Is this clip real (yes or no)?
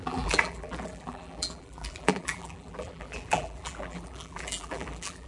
no